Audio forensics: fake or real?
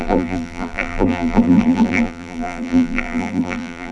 fake